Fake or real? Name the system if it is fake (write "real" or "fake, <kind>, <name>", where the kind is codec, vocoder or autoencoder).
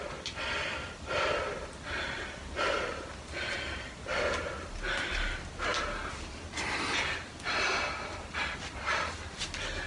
real